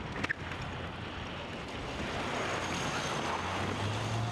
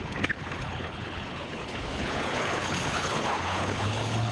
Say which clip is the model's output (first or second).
second